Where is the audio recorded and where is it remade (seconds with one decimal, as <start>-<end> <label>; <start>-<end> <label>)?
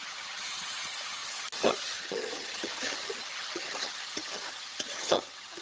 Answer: 0.0-5.6 remade